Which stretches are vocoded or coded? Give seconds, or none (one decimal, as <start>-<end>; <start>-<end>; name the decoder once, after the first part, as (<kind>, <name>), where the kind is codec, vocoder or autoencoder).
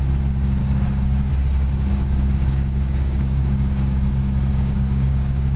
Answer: 0.6-1.3 (codec, DAC); 1.9-4.1; 4.5-5.6